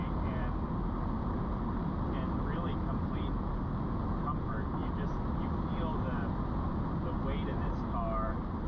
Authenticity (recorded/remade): recorded